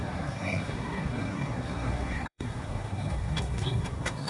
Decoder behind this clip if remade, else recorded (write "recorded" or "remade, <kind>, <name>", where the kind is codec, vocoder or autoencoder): remade, codec, SNAC